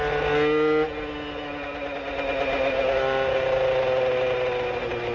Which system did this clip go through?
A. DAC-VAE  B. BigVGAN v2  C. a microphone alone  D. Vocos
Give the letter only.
C